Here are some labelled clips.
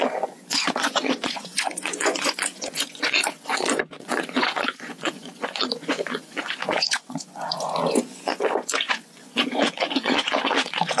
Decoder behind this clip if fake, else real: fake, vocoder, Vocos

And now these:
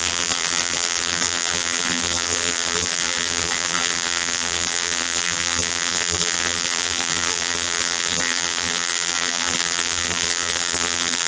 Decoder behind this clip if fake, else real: fake, vocoder, BigVGAN v2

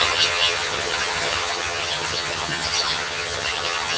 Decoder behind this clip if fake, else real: fake, vocoder, HiFi-GAN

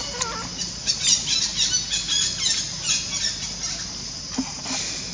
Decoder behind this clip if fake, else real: real